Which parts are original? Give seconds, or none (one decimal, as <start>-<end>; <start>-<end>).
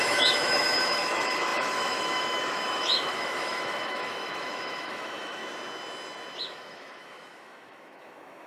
5.4-6.4